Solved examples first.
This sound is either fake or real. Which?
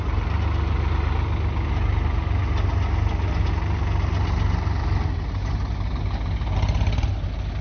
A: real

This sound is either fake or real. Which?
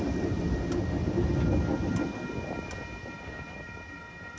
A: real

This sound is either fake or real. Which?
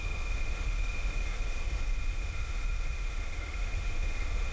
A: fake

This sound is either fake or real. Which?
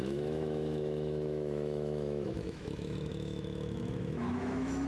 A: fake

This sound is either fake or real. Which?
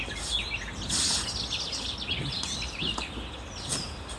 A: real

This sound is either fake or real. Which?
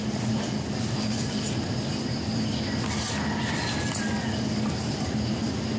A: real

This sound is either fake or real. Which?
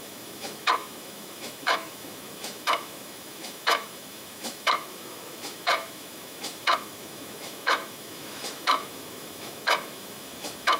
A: fake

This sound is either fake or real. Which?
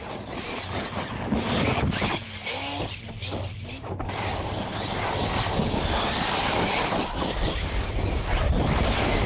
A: real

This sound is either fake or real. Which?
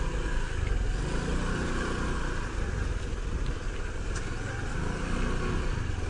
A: real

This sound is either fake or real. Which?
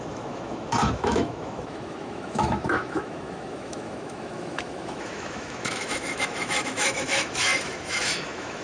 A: fake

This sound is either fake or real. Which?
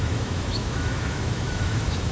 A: fake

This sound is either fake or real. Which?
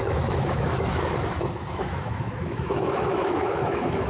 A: fake